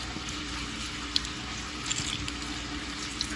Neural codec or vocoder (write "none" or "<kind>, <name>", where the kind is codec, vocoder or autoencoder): none